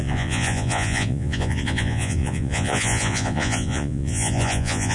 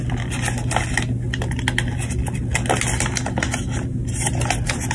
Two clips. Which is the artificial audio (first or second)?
first